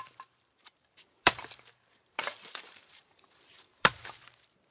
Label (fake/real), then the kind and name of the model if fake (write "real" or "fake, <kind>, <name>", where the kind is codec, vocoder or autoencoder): fake, vocoder, BigVGAN v2